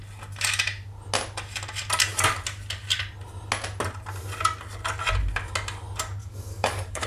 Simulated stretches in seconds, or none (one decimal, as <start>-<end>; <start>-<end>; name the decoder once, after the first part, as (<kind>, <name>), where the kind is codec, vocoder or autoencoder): 6.2-7.1 (codec, DAC)